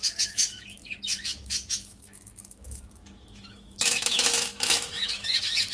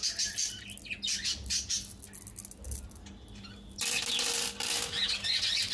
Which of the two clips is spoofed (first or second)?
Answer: first